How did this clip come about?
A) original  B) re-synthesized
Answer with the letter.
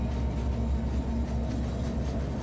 A